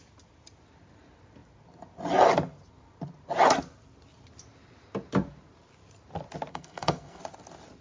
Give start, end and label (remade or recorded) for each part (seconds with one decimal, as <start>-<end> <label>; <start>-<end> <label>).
0.0-6.5 recorded; 6.5-7.2 remade; 7.2-7.8 recorded

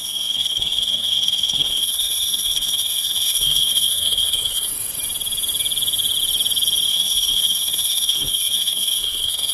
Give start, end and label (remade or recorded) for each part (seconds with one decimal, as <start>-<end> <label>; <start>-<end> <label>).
0.0-4.7 remade; 4.7-6.9 recorded; 6.9-9.5 remade

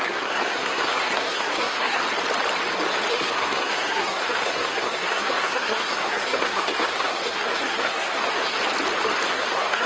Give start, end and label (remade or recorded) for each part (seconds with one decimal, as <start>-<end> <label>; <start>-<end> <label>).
0.0-2.0 remade; 2.0-3.1 recorded; 3.1-8.6 remade; 8.6-9.3 recorded; 9.3-9.9 remade